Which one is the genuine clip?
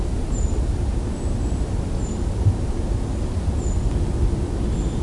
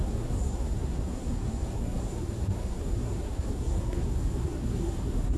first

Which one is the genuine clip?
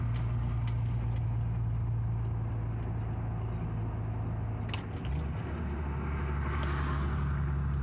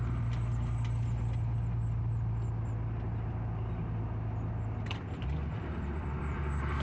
first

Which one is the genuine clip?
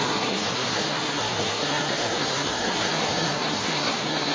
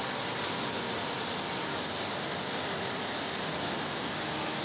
second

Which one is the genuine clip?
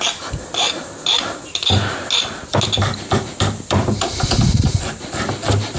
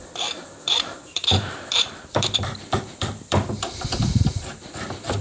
first